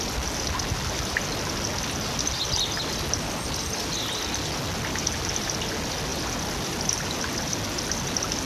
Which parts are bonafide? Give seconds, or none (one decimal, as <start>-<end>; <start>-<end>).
0.0-8.4